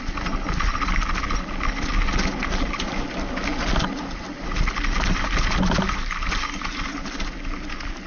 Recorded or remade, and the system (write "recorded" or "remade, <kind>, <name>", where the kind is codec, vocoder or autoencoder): recorded